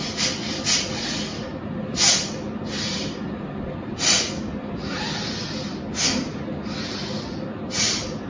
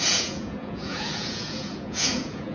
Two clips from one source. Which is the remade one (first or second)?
second